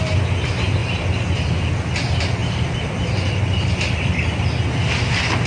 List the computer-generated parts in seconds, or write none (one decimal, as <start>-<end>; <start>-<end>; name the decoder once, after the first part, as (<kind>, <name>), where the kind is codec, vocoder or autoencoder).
0.8-1.7 (vocoder, BigVGAN v2); 2.4-3.8